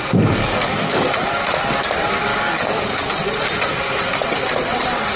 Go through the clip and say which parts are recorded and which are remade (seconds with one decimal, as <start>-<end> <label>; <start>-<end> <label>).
0.0-0.4 recorded; 0.4-1.3 remade; 1.3-2.3 recorded; 2.3-3.1 remade; 3.1-5.2 recorded